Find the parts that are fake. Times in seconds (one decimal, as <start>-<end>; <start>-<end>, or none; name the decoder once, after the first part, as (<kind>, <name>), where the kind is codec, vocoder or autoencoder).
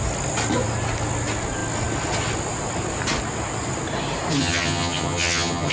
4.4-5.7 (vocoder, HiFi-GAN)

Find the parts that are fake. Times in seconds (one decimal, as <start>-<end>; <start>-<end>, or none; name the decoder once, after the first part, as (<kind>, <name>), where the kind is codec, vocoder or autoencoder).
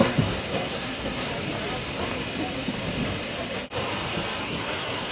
0.0-1.3 (codec, SNAC); 4.4-5.1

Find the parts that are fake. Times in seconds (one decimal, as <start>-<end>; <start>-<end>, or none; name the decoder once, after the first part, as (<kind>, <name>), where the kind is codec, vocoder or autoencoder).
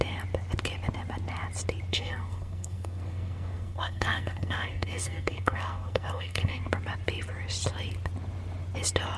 1.9-6.6 (codec, SNAC)